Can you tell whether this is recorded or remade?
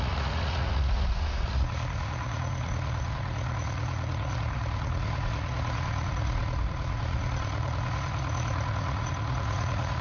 remade